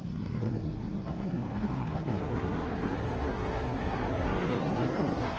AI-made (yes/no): yes